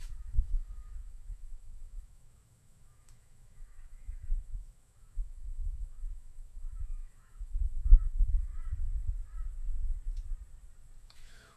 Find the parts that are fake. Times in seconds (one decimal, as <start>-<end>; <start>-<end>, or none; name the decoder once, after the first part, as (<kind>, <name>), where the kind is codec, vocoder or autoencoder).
0.0-8.5 (autoencoder, DAC-VAE); 11.0-11.6